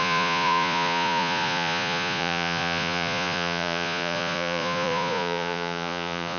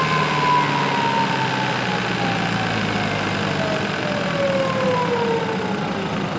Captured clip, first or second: second